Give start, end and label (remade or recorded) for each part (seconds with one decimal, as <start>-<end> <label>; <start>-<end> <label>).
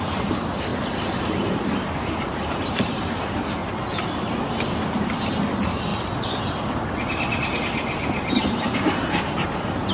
0.0-3.6 remade; 3.6-5.2 recorded; 5.2-5.9 remade; 5.9-8.3 recorded; 8.3-9.9 remade